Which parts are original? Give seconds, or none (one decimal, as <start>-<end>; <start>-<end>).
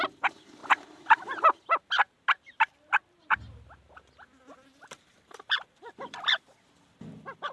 0.6-5.1